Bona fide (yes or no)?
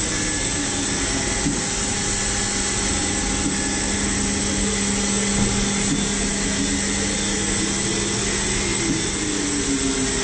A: yes